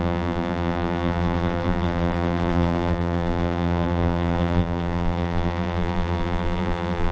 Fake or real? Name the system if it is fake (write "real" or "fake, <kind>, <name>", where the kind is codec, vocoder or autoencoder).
fake, vocoder, BigVGAN v2